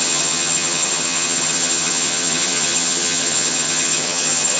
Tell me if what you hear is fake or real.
fake